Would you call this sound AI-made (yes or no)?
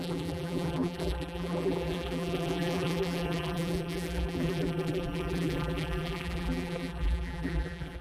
yes